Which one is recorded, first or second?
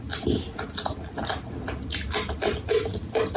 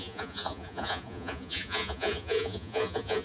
first